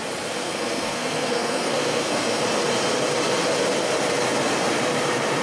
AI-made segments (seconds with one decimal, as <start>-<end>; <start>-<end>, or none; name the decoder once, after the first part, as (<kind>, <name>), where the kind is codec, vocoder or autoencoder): 0.4-2.4 (codec, SNAC)